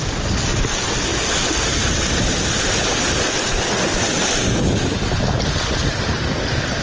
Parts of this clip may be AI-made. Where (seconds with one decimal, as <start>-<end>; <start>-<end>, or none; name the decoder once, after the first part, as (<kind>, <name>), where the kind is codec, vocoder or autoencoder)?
none